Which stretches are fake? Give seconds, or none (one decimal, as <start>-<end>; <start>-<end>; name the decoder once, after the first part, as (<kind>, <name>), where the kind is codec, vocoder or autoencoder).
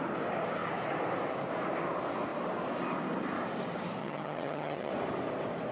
4.0-4.9 (vocoder, HiFi-GAN)